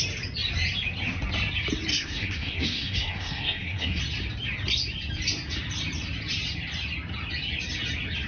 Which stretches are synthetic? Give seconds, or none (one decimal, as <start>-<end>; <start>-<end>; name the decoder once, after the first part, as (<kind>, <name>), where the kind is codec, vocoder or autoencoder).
1.9-4.0 (codec, SNAC)